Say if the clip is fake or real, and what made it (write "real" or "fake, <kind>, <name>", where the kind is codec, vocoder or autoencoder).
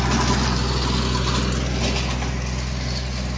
real